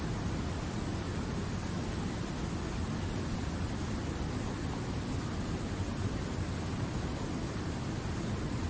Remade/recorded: recorded